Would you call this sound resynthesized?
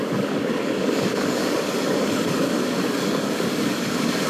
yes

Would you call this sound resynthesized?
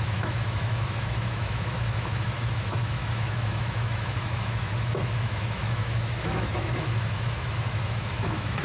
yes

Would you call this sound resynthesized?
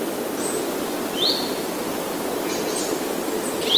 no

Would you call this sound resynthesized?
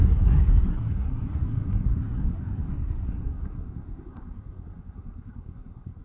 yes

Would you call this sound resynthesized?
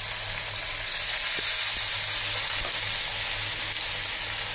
no